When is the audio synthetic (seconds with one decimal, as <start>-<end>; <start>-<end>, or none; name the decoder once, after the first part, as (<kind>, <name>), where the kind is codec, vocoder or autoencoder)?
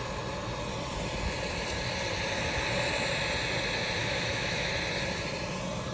4.0-4.7 (autoencoder, DAC-VAE)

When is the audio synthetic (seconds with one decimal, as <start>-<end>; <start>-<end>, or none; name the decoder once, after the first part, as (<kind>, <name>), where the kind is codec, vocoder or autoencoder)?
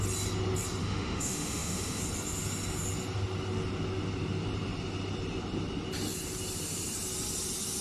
0.8-2.0 (autoencoder, DAC-VAE)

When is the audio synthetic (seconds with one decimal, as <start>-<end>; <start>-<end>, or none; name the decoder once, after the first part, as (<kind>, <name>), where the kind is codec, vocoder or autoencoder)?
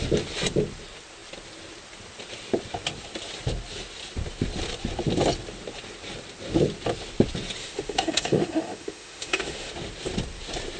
7.6-9.7 (autoencoder, DAC-VAE)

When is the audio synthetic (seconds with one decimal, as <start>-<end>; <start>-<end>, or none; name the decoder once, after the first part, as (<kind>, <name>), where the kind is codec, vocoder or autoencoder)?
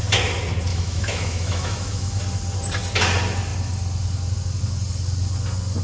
0.7-2.2 (autoencoder, DAC-VAE)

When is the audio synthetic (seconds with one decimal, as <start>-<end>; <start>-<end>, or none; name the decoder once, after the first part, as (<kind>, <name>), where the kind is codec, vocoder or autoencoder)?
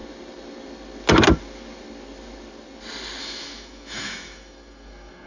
3.2-5.3 (autoencoder, DAC-VAE)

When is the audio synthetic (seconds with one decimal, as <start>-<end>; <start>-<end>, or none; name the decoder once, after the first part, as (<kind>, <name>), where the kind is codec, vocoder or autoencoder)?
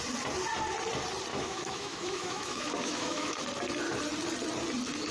1.3-3.4 (autoencoder, DAC-VAE)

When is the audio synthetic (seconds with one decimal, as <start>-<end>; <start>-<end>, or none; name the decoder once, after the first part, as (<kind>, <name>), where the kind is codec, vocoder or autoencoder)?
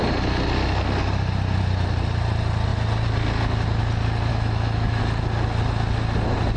4.3-5.0 (autoencoder, DAC-VAE)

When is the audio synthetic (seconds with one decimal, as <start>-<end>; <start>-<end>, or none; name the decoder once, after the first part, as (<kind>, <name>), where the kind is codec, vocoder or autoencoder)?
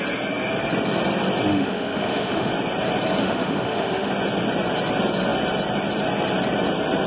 1.5-2.5 (autoencoder, DAC-VAE); 3.2-4.1